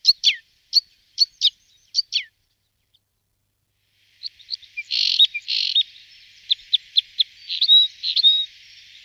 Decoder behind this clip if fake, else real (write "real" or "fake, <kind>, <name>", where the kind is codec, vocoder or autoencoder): fake, vocoder, BigVGAN v2